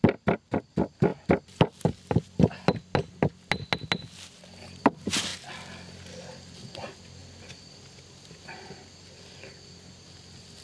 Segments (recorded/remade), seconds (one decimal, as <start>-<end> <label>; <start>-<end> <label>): 0.0-10.6 recorded